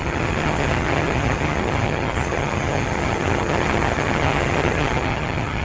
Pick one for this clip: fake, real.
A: fake